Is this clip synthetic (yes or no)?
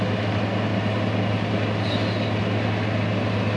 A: yes